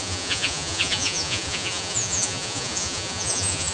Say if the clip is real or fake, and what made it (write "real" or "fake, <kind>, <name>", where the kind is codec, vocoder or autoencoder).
fake, vocoder, Vocos